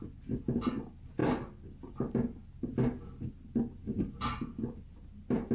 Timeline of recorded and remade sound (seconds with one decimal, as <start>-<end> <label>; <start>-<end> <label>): 0.0-5.5 recorded